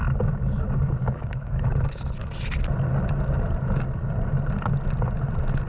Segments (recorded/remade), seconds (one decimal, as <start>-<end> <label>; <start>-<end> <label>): 0.0-1.0 recorded; 1.0-1.7 remade; 1.7-5.7 recorded